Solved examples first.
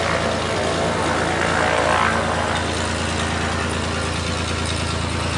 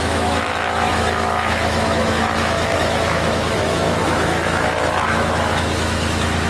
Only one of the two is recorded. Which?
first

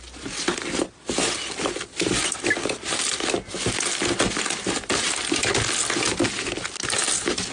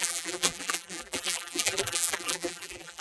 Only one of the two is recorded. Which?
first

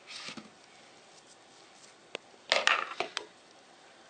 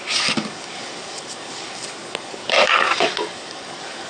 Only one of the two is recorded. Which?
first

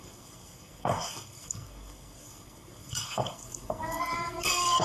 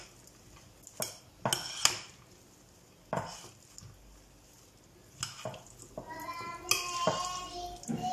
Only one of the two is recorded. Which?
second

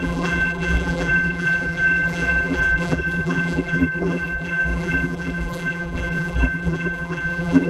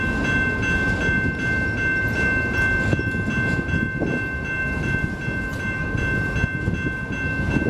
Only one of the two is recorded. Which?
second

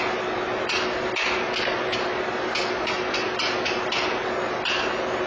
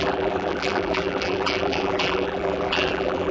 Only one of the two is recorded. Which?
first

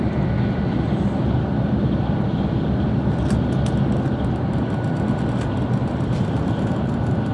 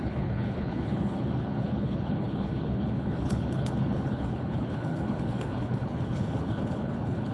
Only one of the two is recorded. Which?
first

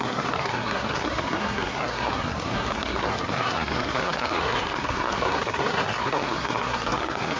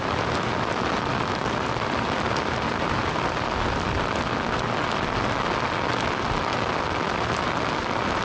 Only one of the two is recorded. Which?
second